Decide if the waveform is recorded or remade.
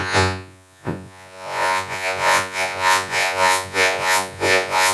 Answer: remade